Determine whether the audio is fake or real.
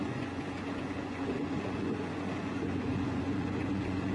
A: fake